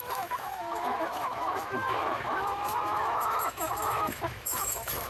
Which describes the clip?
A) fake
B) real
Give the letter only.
A